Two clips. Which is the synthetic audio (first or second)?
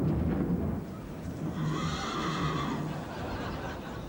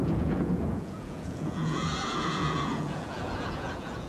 second